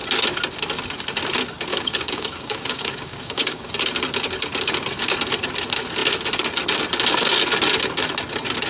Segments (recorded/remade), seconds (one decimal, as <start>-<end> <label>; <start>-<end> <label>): 0.0-1.7 recorded; 1.7-3.7 remade; 3.7-8.7 recorded